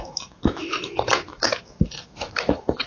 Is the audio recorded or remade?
remade